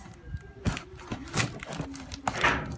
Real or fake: real